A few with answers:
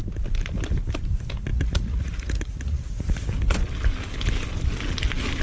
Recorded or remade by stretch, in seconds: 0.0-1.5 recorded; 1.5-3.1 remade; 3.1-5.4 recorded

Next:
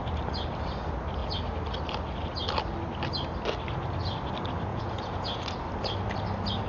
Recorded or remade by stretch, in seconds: 0.0-4.7 recorded; 4.7-5.4 remade; 5.4-6.7 recorded

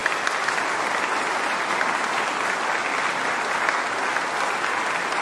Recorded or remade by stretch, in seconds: 0.0-5.2 recorded

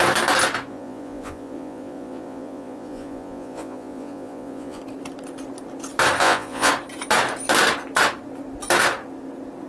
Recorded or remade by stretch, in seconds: 0.0-0.7 recorded; 0.7-4.8 remade; 4.8-6.2 recorded; 6.2-6.7 remade; 6.7-9.7 recorded

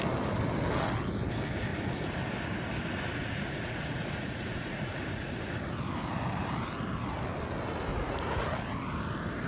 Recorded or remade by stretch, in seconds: 0.0-1.7 recorded; 1.7-2.2 remade; 2.2-3.2 recorded; 3.2-5.3 remade; 5.3-7.9 recorded; 7.9-8.4 remade; 8.4-9.5 recorded

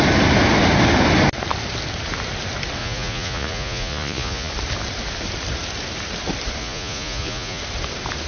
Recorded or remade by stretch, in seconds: 0.0-2.8 recorded; 2.8-4.5 remade; 4.5-6.6 recorded; 6.6-7.6 remade; 7.6-8.3 recorded

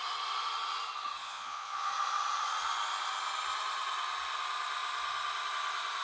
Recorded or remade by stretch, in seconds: 0.0-1.2 recorded; 1.2-1.9 remade; 1.9-6.0 recorded

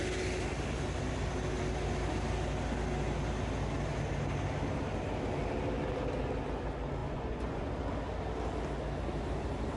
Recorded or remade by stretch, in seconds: 0.0-7.0 recorded; 7.0-7.7 remade; 7.7-9.8 recorded